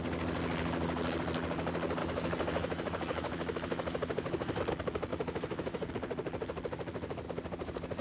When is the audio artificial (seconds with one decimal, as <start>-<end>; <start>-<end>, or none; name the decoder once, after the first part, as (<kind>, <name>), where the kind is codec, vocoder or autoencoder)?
2.0-4.6 (autoencoder, DAC-VAE); 5.1-5.9